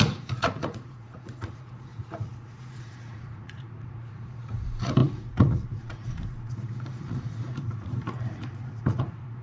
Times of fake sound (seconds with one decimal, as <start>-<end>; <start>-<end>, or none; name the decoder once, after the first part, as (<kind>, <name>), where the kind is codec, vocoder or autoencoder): 0.0-9.4 (vocoder, Vocos)

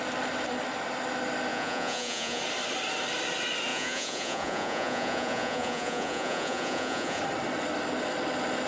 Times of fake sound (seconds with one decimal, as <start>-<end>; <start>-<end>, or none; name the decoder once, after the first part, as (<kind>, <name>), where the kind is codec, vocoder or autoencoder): 1.5-2.4 (vocoder, Vocos); 3.7-7.2

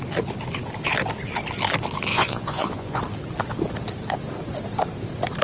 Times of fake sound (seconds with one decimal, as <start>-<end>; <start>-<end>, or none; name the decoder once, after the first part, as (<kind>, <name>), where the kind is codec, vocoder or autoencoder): 2.1-3.0 (vocoder, Vocos)

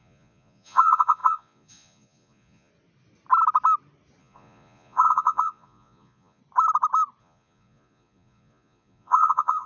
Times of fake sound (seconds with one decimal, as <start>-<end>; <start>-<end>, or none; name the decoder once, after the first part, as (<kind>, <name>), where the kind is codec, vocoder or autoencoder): 0.0-2.7 (vocoder, Vocos); 4.2-6.4; 7.2-9.7

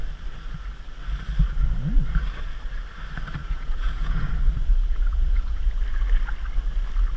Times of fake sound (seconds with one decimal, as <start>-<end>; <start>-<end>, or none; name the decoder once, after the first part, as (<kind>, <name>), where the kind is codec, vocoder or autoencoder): 3.4-4.3 (vocoder, Vocos); 4.7-5.8